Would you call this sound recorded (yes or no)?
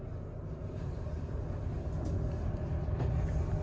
yes